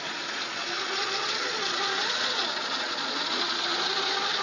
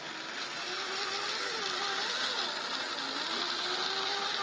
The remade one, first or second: first